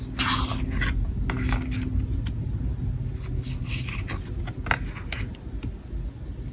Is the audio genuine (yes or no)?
yes